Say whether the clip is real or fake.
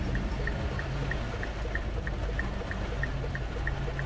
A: real